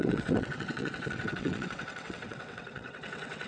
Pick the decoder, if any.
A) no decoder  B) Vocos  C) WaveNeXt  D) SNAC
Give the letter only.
C